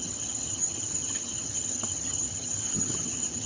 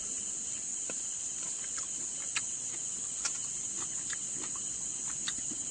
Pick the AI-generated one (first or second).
first